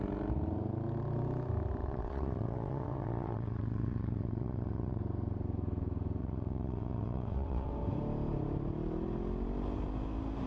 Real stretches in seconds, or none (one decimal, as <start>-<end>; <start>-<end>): 0.0-1.8; 5.0-6.2; 7.7-10.5